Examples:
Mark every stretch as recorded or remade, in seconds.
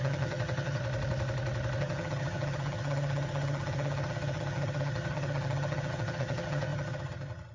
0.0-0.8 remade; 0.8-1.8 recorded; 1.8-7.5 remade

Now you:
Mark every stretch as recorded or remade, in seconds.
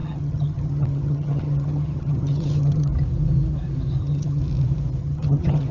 0.0-2.9 remade; 2.9-4.0 recorded; 4.0-4.4 remade; 4.4-5.0 recorded; 5.0-5.7 remade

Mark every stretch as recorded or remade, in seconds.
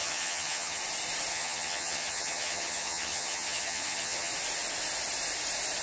0.0-0.8 remade; 0.8-1.3 recorded; 1.3-4.3 remade; 4.3-5.8 recorded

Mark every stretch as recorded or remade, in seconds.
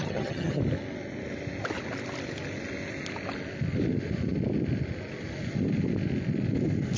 0.0-0.6 remade; 0.6-7.0 recorded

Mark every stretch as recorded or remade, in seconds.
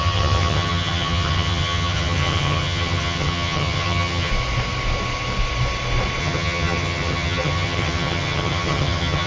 0.0-4.3 remade; 4.3-6.2 recorded; 6.2-9.3 remade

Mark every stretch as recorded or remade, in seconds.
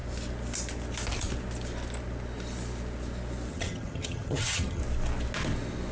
0.0-3.5 recorded; 3.5-4.8 remade; 4.8-5.9 recorded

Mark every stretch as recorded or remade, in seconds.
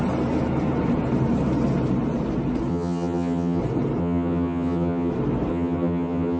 0.0-2.7 recorded; 2.7-3.6 remade; 3.6-4.0 recorded; 4.0-5.1 remade; 5.1-5.5 recorded; 5.5-6.4 remade